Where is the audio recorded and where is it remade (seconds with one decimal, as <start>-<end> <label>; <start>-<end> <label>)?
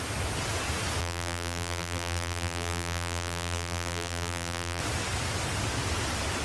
0.0-1.0 recorded; 1.0-4.8 remade; 4.8-6.4 recorded